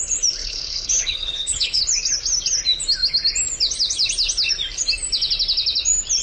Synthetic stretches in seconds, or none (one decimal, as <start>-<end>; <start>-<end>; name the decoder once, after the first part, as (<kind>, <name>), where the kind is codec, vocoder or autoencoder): 0.4-1.8 (codec, HILCodec)